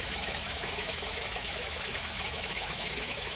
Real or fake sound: fake